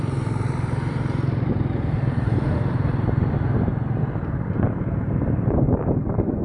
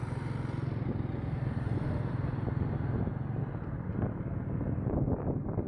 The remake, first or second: first